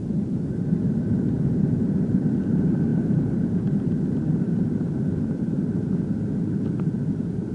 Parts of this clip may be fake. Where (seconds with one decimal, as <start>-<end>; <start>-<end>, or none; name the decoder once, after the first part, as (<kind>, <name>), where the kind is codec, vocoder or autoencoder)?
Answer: 0.0-2.3 (vocoder, BigVGAN v2)

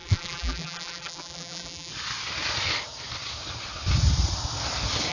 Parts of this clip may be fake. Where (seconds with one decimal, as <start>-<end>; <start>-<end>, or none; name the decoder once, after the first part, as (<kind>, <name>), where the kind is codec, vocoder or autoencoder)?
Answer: 0.0-1.9 (vocoder, BigVGAN v2)